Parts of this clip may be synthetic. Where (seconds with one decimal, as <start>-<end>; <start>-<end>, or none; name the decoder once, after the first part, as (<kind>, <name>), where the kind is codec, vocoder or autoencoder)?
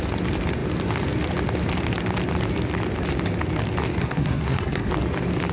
4.0-4.9 (codec, SNAC)